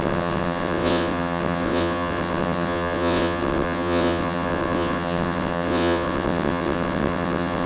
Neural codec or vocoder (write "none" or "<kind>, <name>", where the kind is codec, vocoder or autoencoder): vocoder, WaveNeXt